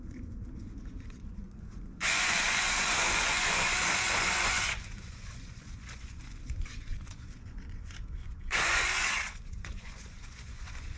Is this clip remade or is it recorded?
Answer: remade